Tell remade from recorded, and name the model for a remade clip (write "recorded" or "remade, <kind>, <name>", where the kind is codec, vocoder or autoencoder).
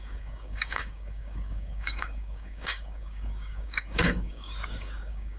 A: remade, codec, DAC